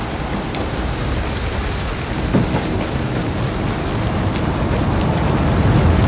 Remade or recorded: recorded